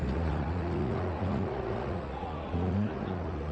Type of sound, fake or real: fake